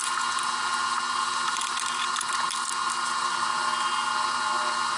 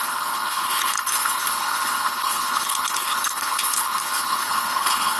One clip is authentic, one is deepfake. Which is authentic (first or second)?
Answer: first